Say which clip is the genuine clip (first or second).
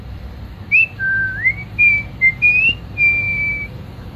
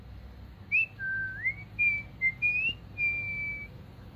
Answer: second